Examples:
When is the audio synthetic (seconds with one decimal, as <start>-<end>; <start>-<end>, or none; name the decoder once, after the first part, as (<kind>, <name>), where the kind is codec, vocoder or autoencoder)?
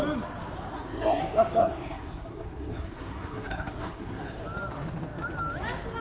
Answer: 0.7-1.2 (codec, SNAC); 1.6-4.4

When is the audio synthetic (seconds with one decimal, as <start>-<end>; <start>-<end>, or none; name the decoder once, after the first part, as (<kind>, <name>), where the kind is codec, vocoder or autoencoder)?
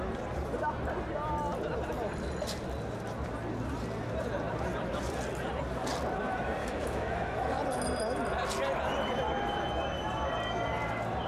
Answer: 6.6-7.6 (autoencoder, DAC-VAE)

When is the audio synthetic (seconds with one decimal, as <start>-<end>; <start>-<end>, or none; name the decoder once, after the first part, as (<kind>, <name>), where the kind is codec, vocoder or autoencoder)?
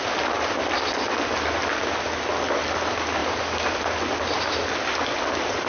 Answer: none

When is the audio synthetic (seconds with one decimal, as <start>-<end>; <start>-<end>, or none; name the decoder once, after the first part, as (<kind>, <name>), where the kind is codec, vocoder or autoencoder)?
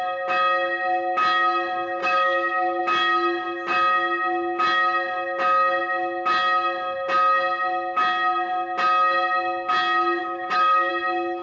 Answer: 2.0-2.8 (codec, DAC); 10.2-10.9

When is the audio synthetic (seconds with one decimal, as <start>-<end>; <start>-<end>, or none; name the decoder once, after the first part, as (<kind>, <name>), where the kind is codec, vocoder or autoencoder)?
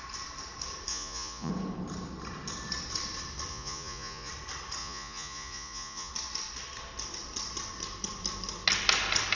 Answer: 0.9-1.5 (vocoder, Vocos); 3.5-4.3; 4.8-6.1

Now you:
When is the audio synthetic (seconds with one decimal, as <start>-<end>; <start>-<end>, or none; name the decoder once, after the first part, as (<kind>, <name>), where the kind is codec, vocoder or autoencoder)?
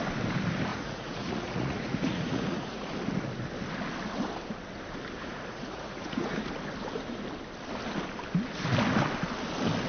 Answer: 0.7-2.9 (vocoder, Vocos); 5.2-6.5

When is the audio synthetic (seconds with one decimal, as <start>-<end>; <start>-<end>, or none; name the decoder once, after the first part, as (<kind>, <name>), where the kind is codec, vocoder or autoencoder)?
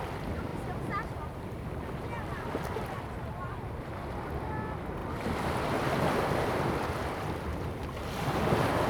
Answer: none